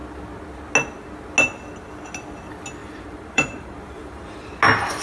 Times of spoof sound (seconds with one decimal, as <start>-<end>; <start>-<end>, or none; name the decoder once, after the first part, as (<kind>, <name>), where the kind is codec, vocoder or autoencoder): 2.8-4.5 (vocoder, BigVGAN v2)